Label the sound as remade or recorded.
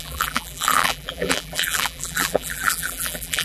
remade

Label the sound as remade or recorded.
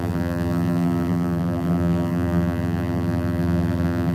remade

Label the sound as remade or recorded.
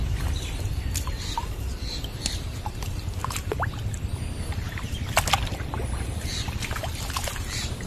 remade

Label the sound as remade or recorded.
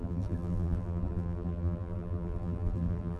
remade